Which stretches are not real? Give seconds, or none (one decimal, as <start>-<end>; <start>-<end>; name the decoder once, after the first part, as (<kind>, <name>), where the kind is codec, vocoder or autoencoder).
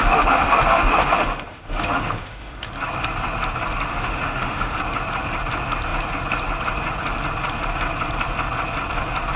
0.0-2.7 (autoencoder, DAC-VAE); 3.9-4.8